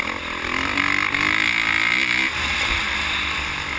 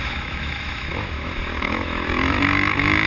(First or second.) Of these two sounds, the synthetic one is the second